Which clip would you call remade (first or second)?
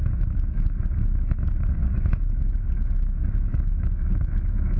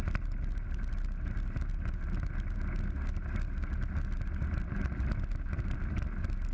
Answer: first